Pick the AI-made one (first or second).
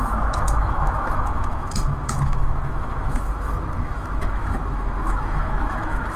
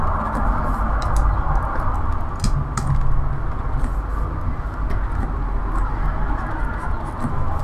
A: first